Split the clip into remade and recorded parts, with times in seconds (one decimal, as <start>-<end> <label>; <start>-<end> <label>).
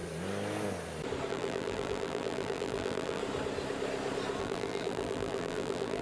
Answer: 0.0-1.3 recorded; 1.3-3.2 remade; 3.2-4.4 recorded; 4.4-6.0 remade